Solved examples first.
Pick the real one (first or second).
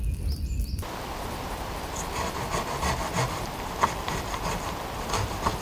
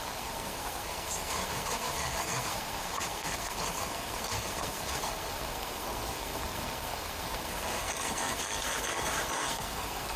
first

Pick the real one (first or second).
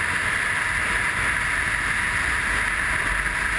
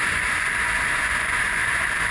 first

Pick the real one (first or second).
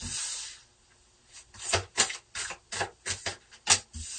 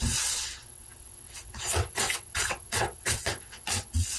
first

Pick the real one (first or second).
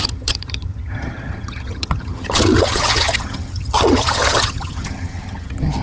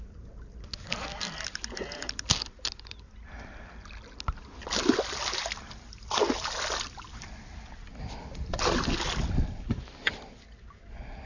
second